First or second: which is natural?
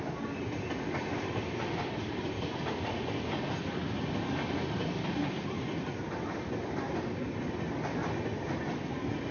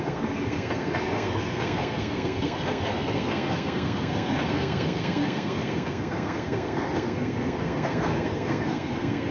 first